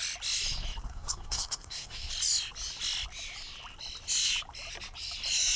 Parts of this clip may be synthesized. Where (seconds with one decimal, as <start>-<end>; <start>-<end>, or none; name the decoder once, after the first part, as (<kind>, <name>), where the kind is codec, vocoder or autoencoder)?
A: 0.9-2.1 (codec, SNAC)